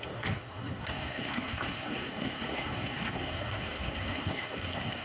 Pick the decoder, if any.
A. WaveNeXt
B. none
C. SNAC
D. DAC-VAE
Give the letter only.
C